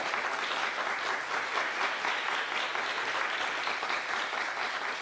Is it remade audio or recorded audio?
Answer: recorded